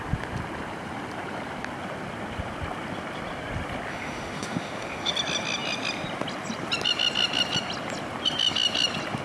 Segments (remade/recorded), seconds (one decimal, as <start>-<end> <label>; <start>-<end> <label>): 0.0-3.9 recorded; 3.9-5.1 remade; 5.1-9.2 recorded